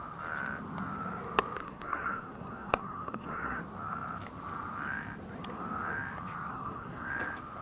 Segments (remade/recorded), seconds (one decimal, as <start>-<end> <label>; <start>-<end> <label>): 0.0-1.6 recorded; 1.6-3.6 remade; 3.6-6.5 recorded; 6.5-7.1 remade; 7.1-7.6 recorded